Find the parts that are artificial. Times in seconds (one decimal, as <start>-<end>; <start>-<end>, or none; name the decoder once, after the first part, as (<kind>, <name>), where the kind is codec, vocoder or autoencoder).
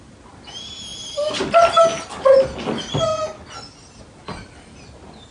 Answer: none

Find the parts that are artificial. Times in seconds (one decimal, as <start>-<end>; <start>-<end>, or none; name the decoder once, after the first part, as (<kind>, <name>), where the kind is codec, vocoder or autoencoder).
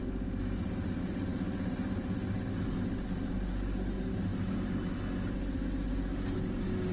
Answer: none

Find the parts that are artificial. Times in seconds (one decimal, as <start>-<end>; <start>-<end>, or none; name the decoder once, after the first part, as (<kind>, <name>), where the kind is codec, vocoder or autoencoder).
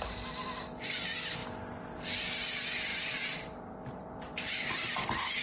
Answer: 2.9-4.9 (vocoder, BigVGAN v2)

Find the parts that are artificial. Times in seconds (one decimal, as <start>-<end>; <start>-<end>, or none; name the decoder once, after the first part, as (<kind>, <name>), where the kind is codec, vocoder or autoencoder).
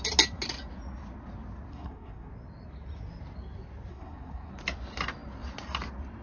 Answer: 1.7-2.3 (codec, SNAC); 3.9-4.5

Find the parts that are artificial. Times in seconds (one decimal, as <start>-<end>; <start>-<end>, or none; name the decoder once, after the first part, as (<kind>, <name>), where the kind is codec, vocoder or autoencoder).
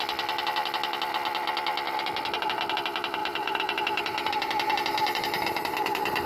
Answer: 3.2-6.3 (vocoder, BigVGAN v2)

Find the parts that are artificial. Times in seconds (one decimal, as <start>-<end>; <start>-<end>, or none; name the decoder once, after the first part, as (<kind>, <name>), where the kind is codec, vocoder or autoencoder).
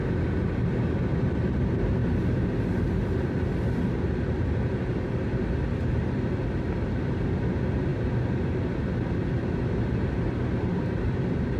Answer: 10.7-11.6 (vocoder, BigVGAN v2)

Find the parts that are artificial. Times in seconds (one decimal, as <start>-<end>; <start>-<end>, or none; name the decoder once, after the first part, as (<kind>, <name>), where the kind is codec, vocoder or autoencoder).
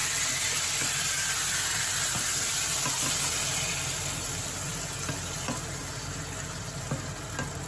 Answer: none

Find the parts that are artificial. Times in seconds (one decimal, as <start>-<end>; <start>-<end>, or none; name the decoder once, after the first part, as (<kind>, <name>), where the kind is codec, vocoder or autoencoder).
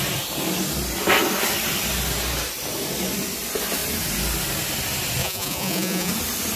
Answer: 5.2-6.1 (vocoder, Vocos)